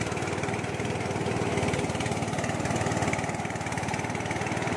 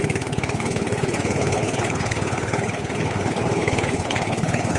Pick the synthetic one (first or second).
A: second